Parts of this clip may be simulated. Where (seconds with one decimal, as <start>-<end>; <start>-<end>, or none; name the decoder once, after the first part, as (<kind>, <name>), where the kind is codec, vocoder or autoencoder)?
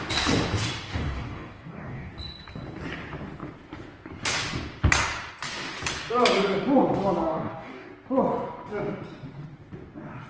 0.9-2.1 (codec, DAC); 7.2-7.9